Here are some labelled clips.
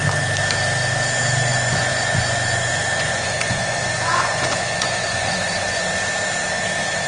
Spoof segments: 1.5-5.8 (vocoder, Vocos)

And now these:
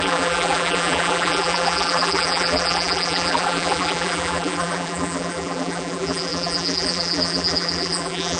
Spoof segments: 0.0-8.4 (vocoder, BigVGAN v2)

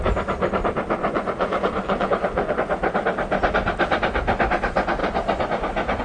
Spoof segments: 1.0-2.5 (vocoder, Vocos)

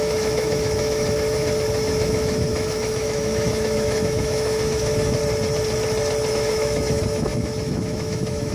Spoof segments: 0.0-5.2 (autoencoder, DAC-VAE); 6.3-8.5

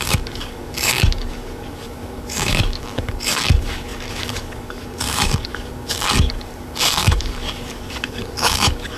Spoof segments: 0.0-9.0 (codec, DAC)

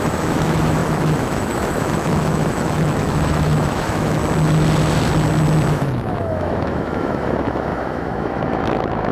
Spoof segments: 0.0-4.2 (autoencoder, DAC-VAE); 5.7-9.1

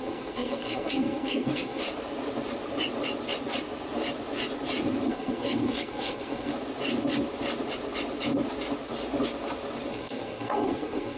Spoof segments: 0.0-1.8 (codec, SNAC); 5.1-6.5; 9.9-11.2